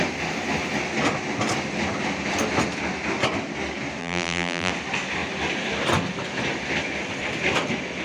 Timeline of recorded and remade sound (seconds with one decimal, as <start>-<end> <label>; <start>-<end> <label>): 0.0-4.0 recorded; 4.0-4.7 remade; 4.7-8.0 recorded